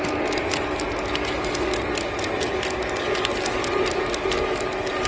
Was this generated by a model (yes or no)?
no